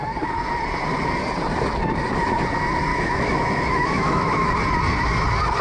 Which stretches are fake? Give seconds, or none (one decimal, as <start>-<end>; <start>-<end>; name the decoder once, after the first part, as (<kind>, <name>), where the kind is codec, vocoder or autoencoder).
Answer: 2.9-4.5 (autoencoder, DAC-VAE)